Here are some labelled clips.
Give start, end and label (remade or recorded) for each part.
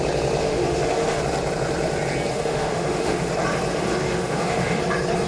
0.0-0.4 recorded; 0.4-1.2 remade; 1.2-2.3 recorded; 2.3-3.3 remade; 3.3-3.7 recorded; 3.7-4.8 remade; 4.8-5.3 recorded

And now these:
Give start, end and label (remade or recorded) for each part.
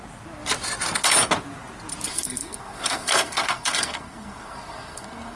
0.0-2.1 recorded; 2.1-5.4 remade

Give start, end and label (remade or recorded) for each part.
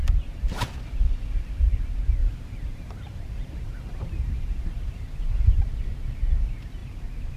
0.0-0.8 remade; 0.8-2.2 recorded; 2.2-5.6 remade; 5.6-6.8 recorded; 6.8-7.4 remade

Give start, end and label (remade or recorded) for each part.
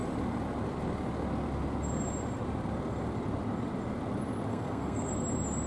0.0-4.5 recorded; 4.5-5.1 remade; 5.1-5.7 recorded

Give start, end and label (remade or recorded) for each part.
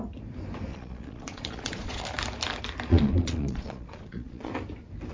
0.0-0.7 recorded; 0.7-2.0 remade; 2.0-2.9 recorded; 2.9-4.5 remade; 4.5-5.1 recorded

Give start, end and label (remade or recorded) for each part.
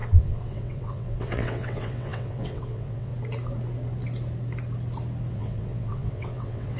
0.0-3.1 remade; 3.1-5.3 recorded; 5.3-6.8 remade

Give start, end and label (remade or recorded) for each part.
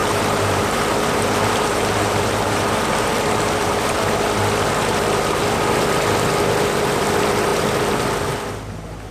0.0-3.7 remade; 3.7-9.1 recorded